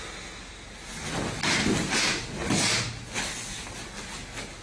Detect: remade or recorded recorded